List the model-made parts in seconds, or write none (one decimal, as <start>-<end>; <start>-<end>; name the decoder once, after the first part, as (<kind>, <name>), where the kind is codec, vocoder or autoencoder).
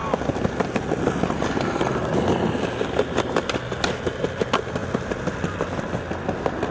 none